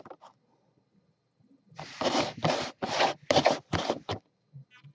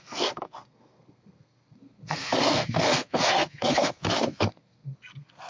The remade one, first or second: second